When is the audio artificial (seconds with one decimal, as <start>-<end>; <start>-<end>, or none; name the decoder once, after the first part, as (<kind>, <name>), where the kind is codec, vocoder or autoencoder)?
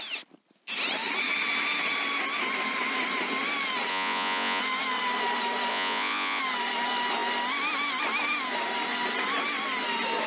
3.9-4.6 (vocoder, Vocos); 5.7-6.4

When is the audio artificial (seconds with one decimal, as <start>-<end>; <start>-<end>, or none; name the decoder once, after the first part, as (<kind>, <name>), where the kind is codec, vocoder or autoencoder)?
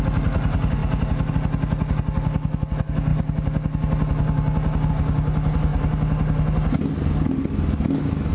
none